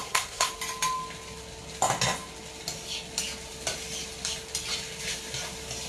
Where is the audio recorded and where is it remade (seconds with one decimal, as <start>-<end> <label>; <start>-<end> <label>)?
0.0-0.5 remade; 0.5-5.9 recorded